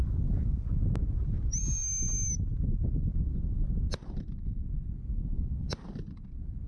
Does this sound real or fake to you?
real